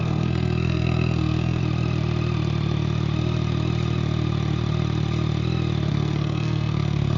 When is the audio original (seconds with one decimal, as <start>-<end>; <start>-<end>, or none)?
1.6-5.9